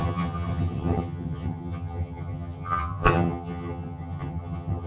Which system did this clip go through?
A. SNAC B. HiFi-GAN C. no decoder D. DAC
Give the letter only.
B